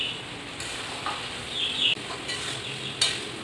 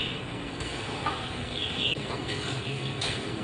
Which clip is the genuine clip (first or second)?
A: first